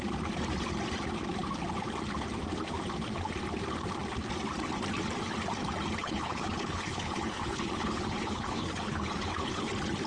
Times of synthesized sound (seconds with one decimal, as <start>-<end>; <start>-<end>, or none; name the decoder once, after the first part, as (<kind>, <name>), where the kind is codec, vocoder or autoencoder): 6.0-9.7 (codec, HILCodec)

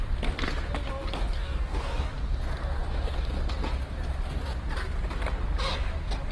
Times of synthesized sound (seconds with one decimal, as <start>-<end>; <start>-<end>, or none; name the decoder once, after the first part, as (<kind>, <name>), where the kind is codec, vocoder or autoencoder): 1.2-2.1 (codec, DAC)

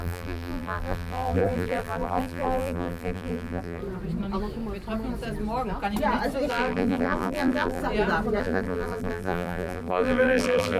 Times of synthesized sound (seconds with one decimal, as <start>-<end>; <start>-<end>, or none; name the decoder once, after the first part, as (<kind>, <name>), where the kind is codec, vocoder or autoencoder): 0.0-3.8 (vocoder, BigVGAN v2); 6.5-7.8; 8.4-10.8

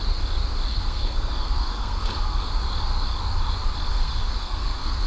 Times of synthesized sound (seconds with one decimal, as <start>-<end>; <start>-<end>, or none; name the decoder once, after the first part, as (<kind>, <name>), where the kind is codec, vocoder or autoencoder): 0.7-2.5 (codec, SNAC); 3.9-5.1

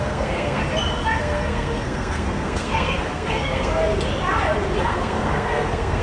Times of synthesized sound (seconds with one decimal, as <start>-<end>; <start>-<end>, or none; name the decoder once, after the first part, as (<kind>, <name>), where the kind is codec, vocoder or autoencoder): 0.0-0.6 (codec, SNAC); 1.2-3.7; 4.8-6.0

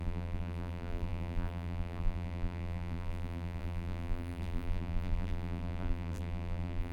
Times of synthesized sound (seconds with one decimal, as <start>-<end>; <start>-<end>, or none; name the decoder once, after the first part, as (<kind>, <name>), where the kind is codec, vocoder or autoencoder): 0.0-6.9 (vocoder, BigVGAN v2)